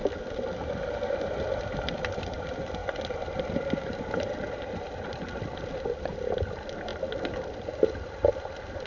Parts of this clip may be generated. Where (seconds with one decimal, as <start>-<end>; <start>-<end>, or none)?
1.2-2.8; 4.0-6.9; 7.8-8.9